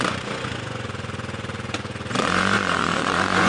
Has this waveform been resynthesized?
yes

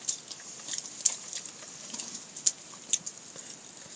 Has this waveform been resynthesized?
no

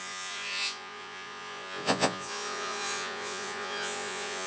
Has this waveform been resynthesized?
yes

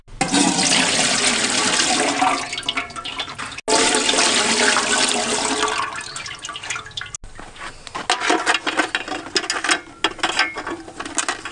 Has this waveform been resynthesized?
no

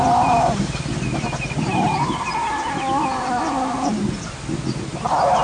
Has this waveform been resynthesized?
no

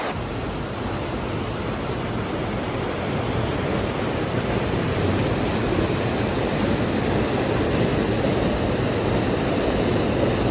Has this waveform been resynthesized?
no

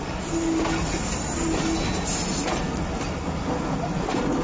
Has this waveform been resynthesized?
no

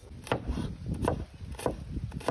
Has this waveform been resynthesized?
no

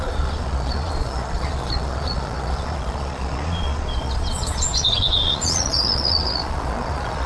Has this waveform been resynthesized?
yes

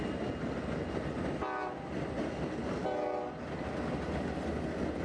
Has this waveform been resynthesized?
no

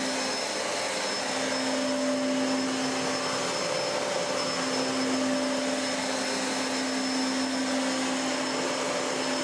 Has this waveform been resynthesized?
no